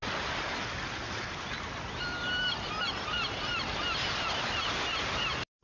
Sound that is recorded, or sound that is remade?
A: recorded